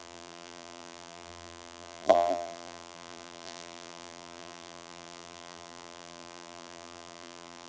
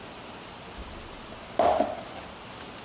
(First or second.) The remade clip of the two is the first